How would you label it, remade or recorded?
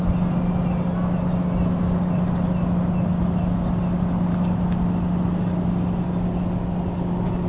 recorded